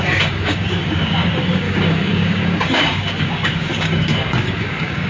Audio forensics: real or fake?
fake